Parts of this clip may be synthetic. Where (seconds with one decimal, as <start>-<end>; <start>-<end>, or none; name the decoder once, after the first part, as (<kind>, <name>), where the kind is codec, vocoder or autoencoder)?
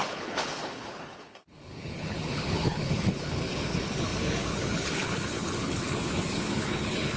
0.0-7.2 (codec, HILCodec)